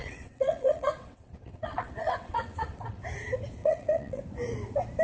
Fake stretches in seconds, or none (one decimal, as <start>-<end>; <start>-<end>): 0.0-3.0; 3.6-4.2